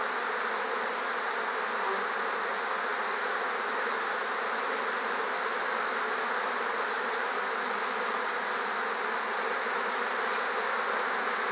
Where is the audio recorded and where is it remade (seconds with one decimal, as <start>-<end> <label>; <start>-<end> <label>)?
0.0-11.5 recorded

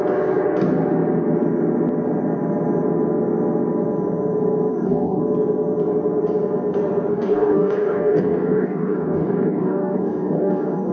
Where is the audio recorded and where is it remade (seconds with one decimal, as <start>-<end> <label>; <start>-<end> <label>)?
0.0-4.7 recorded; 4.7-5.2 remade; 5.2-7.1 recorded; 7.1-10.9 remade

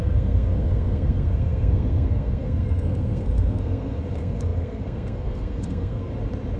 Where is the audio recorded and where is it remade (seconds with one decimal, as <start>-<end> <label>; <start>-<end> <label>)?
0.0-6.1 remade; 6.1-6.6 recorded

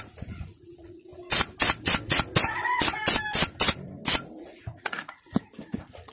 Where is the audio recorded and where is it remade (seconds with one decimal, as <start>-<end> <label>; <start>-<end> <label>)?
0.0-1.1 remade; 1.1-4.4 recorded; 4.4-6.1 remade

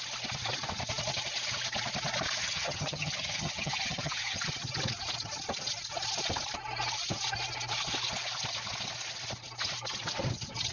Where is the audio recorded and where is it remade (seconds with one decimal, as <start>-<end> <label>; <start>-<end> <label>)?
0.0-2.4 recorded; 2.4-4.4 remade; 4.4-10.7 recorded